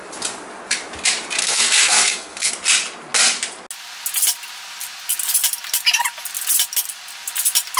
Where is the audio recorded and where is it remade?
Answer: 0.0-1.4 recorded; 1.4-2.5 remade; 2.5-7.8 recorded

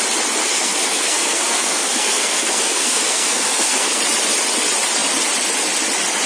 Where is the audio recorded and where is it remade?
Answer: 0.0-0.4 recorded; 0.4-4.0 remade; 4.0-6.3 recorded

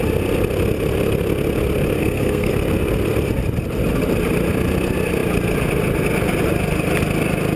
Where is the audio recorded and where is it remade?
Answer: 0.0-2.0 recorded; 2.0-2.5 remade; 2.5-7.6 recorded

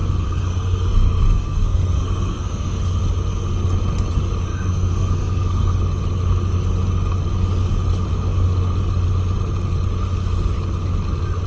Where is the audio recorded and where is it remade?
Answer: 0.0-2.8 remade; 2.8-4.5 recorded; 4.5-5.8 remade; 5.8-11.5 recorded

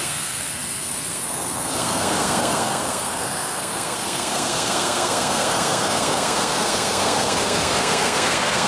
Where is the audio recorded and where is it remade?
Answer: 0.0-8.7 remade